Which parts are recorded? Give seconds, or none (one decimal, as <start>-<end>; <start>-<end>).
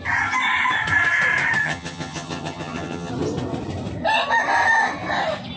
0.0-1.6; 3.1-5.6